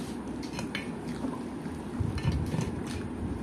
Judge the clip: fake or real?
real